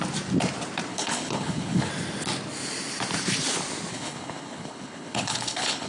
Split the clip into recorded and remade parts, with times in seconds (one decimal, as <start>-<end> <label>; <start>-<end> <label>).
0.0-0.9 recorded; 0.9-1.9 remade; 1.9-3.9 recorded; 3.9-5.9 remade